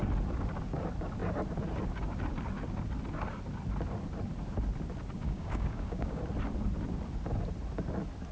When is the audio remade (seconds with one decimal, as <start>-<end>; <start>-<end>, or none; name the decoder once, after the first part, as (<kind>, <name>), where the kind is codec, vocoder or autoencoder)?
5.2-6.2 (codec, DAC)